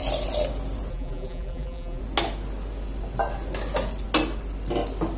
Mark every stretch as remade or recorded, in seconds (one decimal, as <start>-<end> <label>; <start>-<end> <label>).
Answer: 0.0-0.9 recorded; 0.9-2.0 remade; 2.0-5.2 recorded